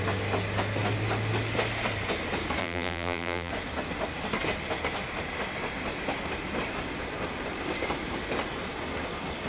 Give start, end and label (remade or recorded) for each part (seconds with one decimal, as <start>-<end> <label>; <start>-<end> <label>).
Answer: 0.0-2.6 recorded; 2.6-3.5 remade; 3.5-9.5 recorded